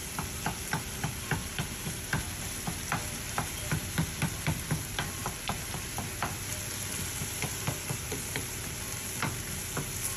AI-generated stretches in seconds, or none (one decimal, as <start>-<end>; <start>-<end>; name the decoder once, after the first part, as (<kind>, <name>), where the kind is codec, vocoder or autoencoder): 0.0-10.2 (vocoder, BigVGAN v2)